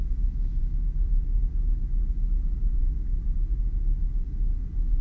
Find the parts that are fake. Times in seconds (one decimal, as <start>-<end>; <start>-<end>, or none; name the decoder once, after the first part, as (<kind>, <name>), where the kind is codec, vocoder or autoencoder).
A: none